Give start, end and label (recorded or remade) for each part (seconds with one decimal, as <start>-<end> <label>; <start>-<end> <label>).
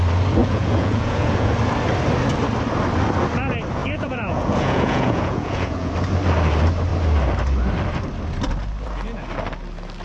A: 0.0-0.4 recorded; 0.4-1.5 remade; 1.5-3.8 recorded; 3.8-5.9 remade; 5.9-10.0 recorded